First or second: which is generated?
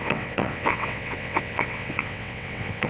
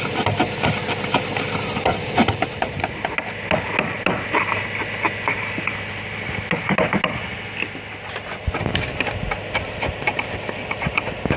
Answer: first